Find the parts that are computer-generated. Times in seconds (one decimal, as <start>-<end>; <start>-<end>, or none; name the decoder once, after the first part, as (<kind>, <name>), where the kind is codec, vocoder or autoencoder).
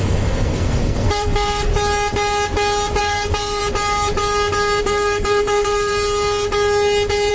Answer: 0.0-1.7 (codec, SNAC); 3.0-3.6; 4.8-5.9